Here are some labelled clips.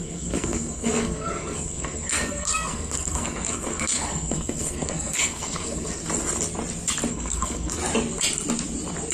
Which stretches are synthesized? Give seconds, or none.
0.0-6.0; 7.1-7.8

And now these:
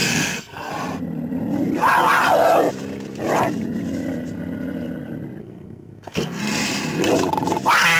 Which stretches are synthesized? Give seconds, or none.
0.0-0.7; 5.4-6.4

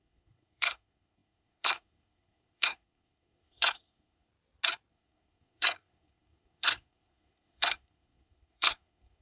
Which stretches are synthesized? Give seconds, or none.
0.0-4.3; 4.9-9.2

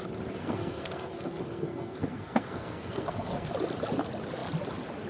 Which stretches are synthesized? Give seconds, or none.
0.4-3.5